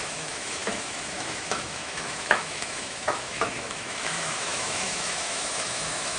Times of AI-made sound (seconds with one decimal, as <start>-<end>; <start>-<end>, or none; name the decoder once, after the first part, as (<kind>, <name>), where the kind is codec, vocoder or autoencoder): 0.0-6.2 (autoencoder, DAC-VAE)